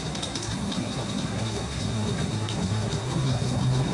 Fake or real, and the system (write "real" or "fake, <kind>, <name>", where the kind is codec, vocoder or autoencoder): fake, codec, SNAC